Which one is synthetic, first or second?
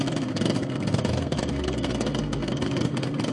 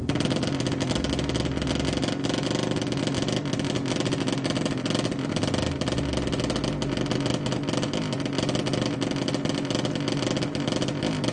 first